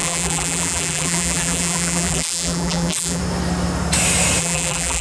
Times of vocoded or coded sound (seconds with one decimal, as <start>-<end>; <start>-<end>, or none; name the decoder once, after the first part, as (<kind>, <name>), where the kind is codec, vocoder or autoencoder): 0.0-3.2 (vocoder, BigVGAN v2); 4.4-5.0

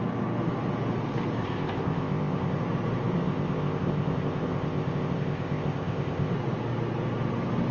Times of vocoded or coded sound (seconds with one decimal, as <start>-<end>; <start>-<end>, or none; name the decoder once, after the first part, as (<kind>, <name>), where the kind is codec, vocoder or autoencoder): 1.4-2.6 (codec, ZipCodec); 3.1-6.3

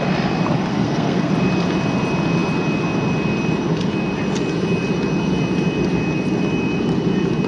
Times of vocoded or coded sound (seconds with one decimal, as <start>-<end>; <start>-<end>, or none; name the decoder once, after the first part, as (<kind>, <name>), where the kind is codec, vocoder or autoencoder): 0.7-1.3 (codec, SNAC)

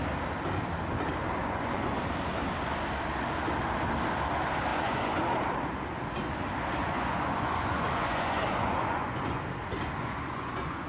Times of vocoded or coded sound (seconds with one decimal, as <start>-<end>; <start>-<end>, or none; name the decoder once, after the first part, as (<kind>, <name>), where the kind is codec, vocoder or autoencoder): 1.4-2.0 (vocoder, Vocos); 4.7-5.2; 6.8-9.4; 10.0-10.9

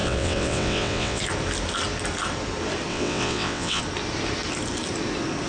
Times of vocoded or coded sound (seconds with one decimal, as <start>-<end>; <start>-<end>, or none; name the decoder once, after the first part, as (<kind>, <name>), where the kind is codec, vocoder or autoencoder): 0.0-1.2 (vocoder, WaveNeXt); 2.9-3.8